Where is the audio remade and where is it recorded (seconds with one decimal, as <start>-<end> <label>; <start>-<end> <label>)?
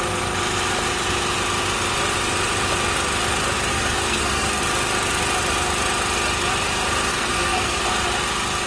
0.0-3.7 recorded; 3.7-4.6 remade; 4.6-7.1 recorded; 7.1-7.9 remade; 7.9-8.7 recorded